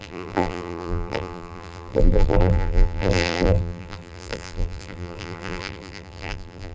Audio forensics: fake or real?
fake